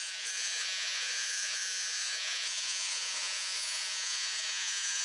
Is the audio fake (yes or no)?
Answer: yes